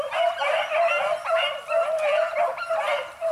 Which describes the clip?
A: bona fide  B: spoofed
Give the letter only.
A